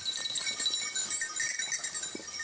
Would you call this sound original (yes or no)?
yes